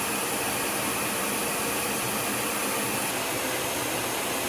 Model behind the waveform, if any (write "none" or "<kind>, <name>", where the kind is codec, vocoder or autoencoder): none